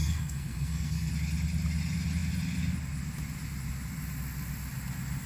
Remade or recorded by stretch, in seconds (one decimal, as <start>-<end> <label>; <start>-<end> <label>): 0.0-1.1 remade; 1.1-5.3 recorded